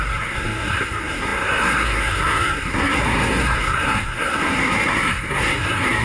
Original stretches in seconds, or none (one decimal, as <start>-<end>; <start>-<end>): none